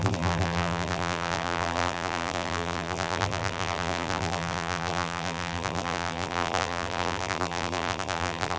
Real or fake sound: fake